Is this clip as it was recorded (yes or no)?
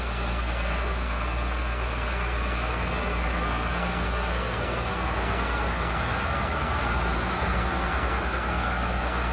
no